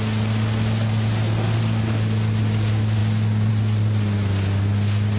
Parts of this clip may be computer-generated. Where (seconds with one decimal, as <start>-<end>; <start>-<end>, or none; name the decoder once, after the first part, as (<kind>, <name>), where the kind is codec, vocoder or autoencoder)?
none